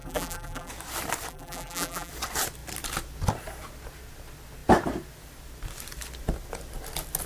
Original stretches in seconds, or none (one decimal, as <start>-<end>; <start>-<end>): 0.7-1.3; 2.1-7.3